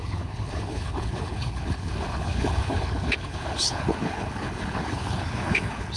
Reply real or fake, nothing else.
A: fake